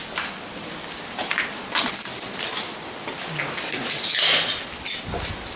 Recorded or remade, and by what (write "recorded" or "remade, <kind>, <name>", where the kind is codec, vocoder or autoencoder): recorded